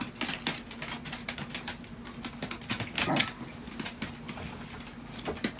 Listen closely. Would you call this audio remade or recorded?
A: recorded